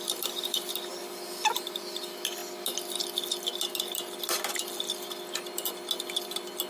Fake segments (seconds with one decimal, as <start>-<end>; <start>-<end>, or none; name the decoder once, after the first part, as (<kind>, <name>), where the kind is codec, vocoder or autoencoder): none